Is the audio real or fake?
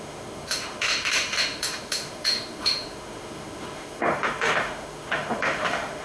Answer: fake